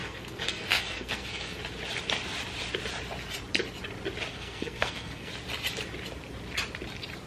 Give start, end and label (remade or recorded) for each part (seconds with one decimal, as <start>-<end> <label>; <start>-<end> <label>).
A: 0.0-1.6 remade; 1.6-4.3 recorded; 4.3-5.3 remade; 5.3-7.3 recorded